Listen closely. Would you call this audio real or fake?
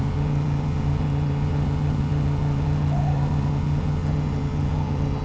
fake